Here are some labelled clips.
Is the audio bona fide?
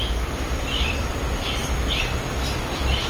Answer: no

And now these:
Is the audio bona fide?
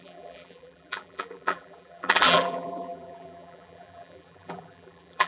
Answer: no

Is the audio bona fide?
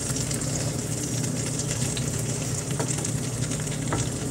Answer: no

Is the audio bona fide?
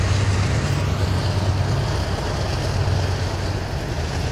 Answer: yes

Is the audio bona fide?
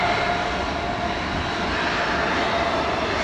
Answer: yes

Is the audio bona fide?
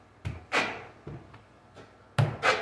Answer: yes